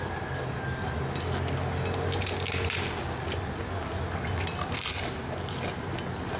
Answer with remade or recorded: recorded